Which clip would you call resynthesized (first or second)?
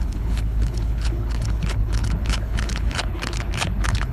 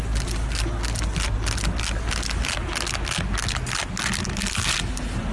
first